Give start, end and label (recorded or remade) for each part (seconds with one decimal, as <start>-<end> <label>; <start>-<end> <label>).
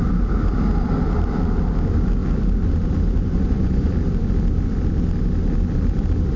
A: 0.0-3.3 recorded; 3.3-3.9 remade; 3.9-6.4 recorded